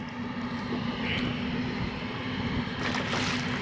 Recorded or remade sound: recorded